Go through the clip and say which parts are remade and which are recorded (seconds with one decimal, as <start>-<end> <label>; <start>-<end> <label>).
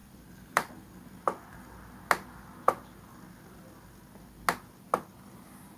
0.0-0.7 remade; 0.7-5.8 recorded